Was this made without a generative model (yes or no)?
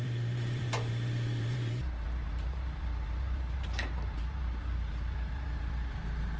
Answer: no